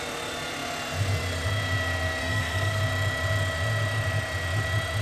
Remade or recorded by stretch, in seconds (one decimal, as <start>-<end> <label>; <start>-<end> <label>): 0.0-2.2 recorded; 2.2-2.8 remade; 2.8-5.0 recorded